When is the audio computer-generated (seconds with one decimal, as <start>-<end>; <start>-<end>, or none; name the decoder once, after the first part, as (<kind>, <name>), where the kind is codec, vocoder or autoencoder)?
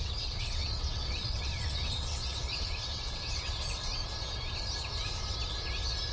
0.0-4.0 (vocoder, WaveNeXt)